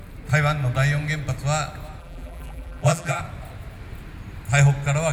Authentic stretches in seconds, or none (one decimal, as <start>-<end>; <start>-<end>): 0.0-2.0; 3.2-5.1